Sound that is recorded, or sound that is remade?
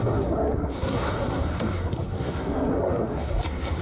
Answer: remade